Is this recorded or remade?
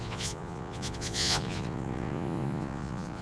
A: remade